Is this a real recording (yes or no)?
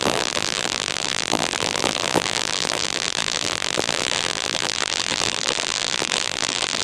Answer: no